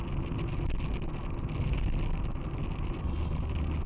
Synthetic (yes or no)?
no